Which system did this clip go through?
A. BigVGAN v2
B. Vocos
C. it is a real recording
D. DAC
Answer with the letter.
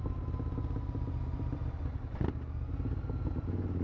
C